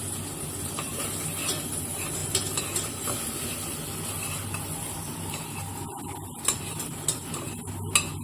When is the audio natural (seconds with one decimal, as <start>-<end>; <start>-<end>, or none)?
0.0-8.2